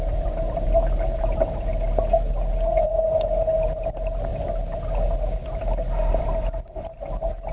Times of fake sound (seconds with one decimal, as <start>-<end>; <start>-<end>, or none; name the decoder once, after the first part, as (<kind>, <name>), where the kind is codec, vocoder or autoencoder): 0.0-1.7 (vocoder, BigVGAN v2); 3.8-4.3; 6.2-7.5